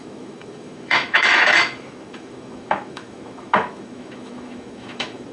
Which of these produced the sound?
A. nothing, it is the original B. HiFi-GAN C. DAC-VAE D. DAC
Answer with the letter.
C